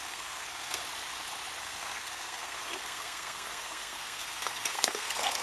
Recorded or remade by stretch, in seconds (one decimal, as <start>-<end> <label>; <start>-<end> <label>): 0.0-0.8 remade; 0.8-1.6 recorded; 1.6-5.4 remade